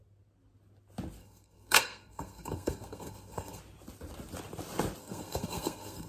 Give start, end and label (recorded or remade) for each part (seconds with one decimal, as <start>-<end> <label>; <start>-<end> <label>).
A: 0.0-1.2 recorded; 1.2-3.6 remade; 3.6-5.0 recorded; 5.0-6.1 remade